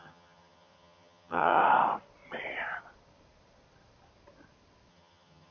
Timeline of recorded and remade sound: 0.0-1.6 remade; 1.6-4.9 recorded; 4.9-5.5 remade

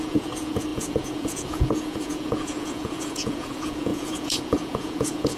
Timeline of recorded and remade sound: 0.0-5.4 remade